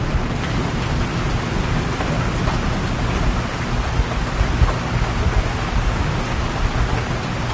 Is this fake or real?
real